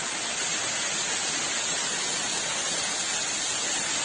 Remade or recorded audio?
recorded